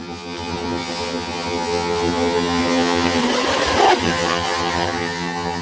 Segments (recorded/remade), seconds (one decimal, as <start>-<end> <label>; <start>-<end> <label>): 0.0-3.2 remade; 3.2-4.0 recorded; 4.0-5.6 remade